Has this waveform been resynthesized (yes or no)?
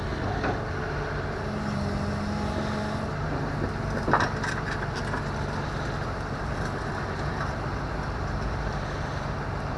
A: no